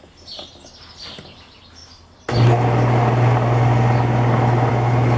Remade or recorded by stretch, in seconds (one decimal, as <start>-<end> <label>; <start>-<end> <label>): 0.0-5.2 recorded